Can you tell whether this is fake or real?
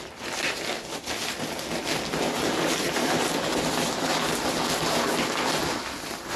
real